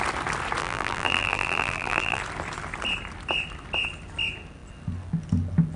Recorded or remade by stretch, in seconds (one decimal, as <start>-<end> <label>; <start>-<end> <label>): 0.0-0.6 recorded; 0.6-2.2 remade; 2.2-5.8 recorded